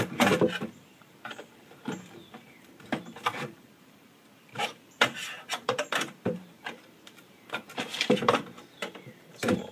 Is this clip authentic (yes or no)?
no